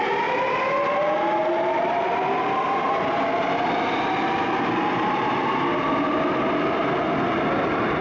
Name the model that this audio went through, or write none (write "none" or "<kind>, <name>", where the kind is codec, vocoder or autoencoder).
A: none